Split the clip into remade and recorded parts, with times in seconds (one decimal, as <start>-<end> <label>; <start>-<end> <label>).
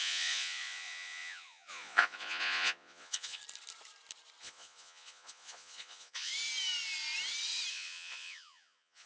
0.0-3.4 remade; 3.4-4.4 recorded; 4.4-6.3 remade; 6.3-7.7 recorded; 7.7-9.1 remade